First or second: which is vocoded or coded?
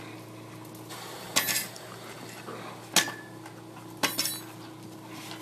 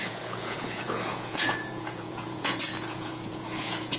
second